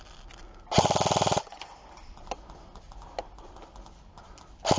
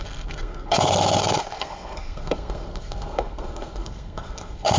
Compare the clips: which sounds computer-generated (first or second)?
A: second